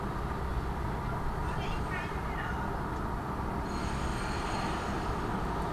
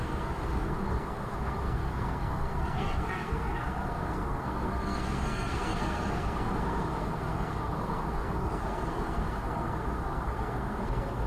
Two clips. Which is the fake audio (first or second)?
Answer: second